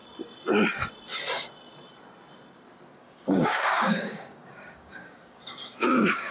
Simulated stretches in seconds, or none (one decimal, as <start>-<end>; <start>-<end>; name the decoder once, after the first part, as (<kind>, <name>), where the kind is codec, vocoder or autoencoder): 3.0-6.3 (codec, DAC)